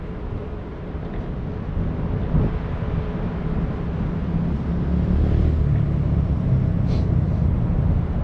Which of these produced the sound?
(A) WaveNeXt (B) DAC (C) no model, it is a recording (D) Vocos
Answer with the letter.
C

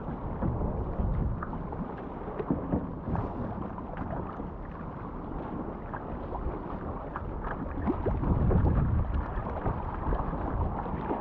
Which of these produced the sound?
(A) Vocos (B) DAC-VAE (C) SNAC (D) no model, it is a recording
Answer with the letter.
D